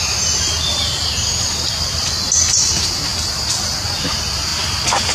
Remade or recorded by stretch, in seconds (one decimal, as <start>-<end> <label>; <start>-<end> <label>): 0.0-5.1 recorded